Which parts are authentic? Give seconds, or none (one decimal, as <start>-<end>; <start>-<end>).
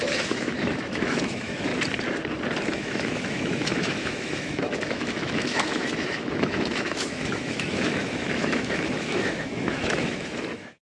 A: 1.7-2.7